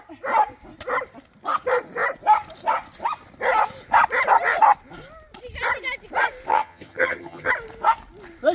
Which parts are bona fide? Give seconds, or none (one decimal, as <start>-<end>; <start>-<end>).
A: 0.0-6.5; 7.5-8.5